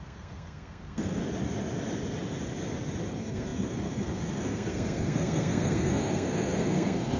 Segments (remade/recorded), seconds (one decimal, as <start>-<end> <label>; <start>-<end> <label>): 0.0-1.2 remade; 1.2-3.1 recorded; 3.1-7.2 remade